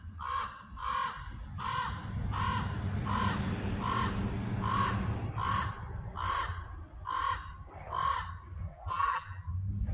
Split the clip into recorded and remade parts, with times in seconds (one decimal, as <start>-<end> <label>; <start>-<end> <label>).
0.0-8.7 recorded; 8.7-9.5 remade; 9.5-9.9 recorded